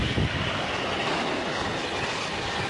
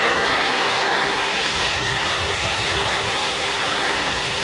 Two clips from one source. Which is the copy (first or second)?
second